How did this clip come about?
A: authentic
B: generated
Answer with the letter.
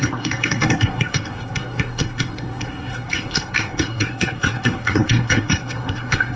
B